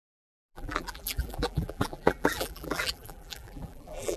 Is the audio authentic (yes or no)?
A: no